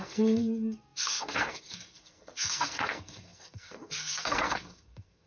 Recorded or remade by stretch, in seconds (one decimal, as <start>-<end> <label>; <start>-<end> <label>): 0.0-5.3 remade